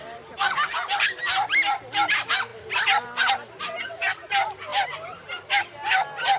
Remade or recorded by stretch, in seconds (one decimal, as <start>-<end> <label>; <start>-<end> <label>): 0.0-6.4 recorded

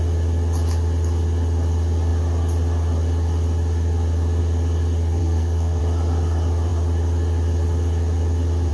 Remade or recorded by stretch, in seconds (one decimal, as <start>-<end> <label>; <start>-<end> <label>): 0.0-5.2 recorded; 5.2-5.8 remade; 5.8-8.7 recorded

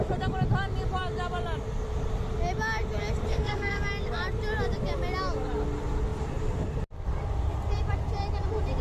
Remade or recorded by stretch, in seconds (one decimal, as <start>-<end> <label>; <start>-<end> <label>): 0.0-3.3 recorded; 3.3-3.8 remade; 3.8-8.8 recorded